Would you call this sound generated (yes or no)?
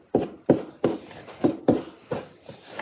no